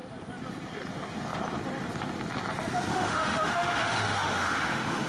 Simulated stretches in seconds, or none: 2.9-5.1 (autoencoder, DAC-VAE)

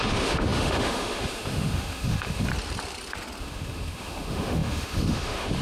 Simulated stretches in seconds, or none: 0.0-2.5 (autoencoder, DAC-VAE); 3.4-5.6